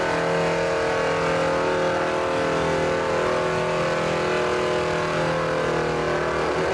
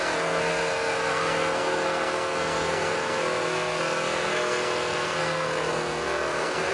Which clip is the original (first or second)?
first